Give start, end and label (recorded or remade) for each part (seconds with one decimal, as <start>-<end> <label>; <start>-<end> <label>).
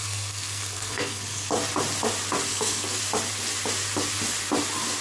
0.0-1.5 remade; 1.5-2.5 recorded; 2.5-3.0 remade; 3.0-5.0 recorded